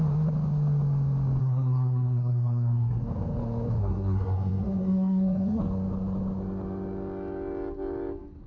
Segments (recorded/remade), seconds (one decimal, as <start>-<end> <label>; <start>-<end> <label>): 0.0-1.4 recorded; 1.4-3.0 remade; 3.0-3.8 recorded; 3.8-5.6 remade; 5.6-8.5 recorded